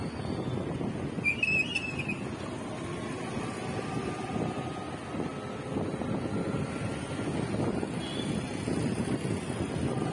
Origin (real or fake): real